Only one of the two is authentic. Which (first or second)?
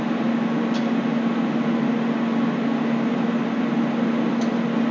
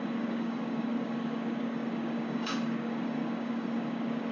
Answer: first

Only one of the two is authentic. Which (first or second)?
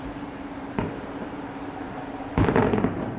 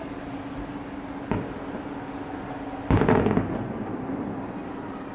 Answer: second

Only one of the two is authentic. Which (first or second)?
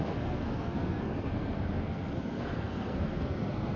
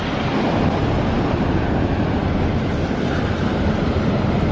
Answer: second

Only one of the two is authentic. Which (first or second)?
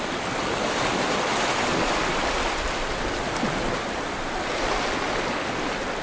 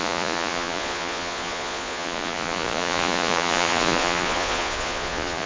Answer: first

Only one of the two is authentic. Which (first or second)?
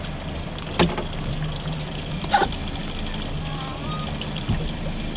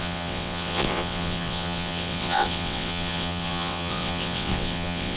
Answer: first